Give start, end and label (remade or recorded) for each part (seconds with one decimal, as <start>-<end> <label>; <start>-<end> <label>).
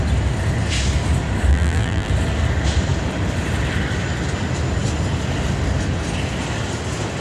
0.0-1.5 recorded; 1.5-2.1 remade; 2.1-7.2 recorded